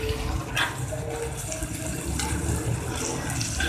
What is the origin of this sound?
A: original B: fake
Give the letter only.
A